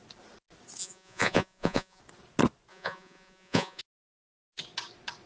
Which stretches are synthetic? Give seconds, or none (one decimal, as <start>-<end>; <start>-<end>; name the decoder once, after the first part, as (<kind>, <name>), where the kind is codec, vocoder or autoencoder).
0.8-2.0 (vocoder, Vocos); 2.7-3.8